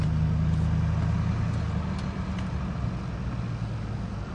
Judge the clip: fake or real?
real